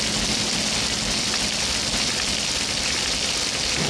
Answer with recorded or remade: recorded